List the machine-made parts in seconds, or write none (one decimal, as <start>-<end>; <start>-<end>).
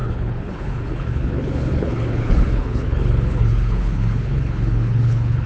0.0-5.5